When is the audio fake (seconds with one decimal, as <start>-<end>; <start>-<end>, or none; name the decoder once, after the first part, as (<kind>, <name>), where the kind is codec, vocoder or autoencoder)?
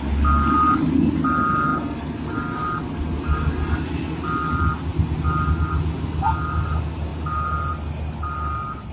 none